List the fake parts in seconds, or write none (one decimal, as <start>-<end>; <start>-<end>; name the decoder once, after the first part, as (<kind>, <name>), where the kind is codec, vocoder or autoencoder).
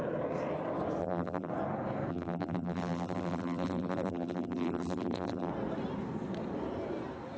1.0-1.5 (vocoder, BigVGAN v2); 2.1-5.5